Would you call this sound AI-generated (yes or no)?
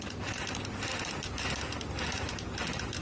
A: no